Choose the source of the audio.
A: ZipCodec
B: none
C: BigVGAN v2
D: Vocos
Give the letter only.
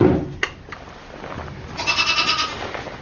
B